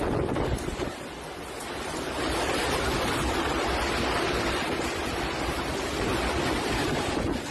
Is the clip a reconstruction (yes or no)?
no